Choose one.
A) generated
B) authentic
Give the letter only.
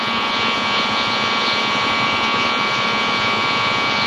A